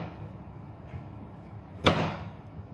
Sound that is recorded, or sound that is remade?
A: remade